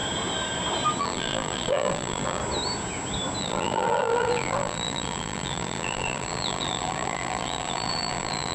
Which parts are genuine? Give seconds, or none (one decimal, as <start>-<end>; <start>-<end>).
0.0-1.0; 2.4-3.4